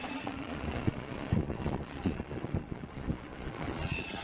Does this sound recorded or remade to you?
remade